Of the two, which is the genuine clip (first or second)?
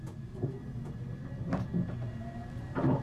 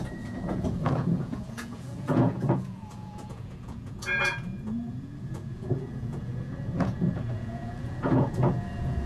first